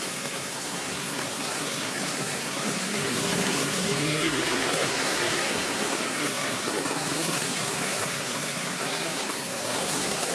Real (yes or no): no